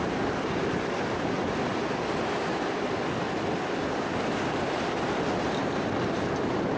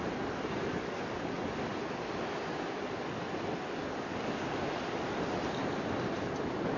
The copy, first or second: first